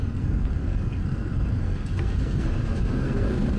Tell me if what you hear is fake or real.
fake